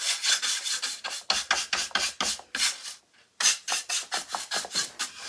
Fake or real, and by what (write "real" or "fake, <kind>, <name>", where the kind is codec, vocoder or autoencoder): real